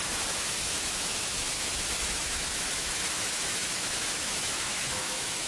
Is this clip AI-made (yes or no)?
yes